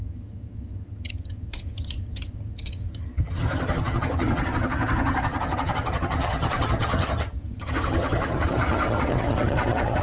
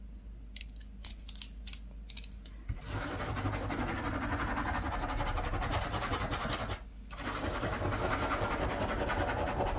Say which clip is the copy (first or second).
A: first